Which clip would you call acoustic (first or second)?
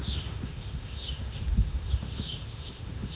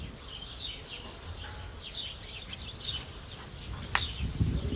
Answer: second